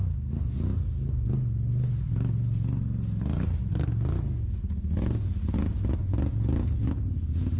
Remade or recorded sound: recorded